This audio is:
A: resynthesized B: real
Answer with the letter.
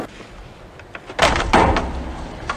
B